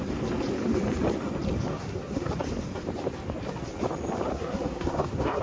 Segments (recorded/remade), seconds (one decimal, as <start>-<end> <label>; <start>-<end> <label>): 0.0-1.7 recorded; 1.7-2.3 remade; 2.3-4.3 recorded; 4.3-5.4 remade